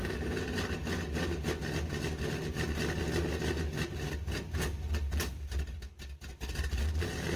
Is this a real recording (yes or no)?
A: yes